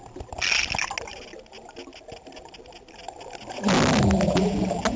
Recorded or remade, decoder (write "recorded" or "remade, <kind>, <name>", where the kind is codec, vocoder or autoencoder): recorded